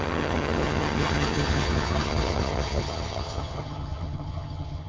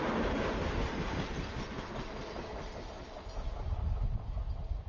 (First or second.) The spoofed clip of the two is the first